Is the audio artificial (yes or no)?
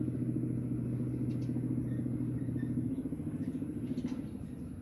no